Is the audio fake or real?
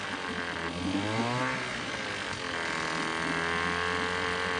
real